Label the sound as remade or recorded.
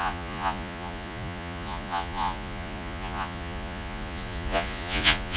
remade